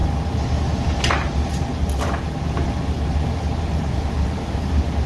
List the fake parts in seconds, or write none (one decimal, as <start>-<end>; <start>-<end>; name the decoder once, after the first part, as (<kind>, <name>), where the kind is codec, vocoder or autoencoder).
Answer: none